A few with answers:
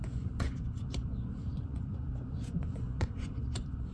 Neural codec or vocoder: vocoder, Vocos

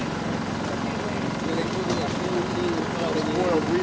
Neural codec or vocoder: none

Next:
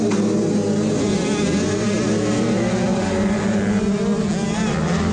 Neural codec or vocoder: none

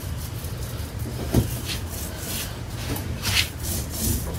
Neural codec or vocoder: none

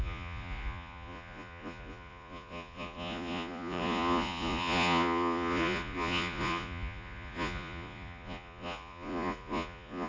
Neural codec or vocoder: vocoder, Vocos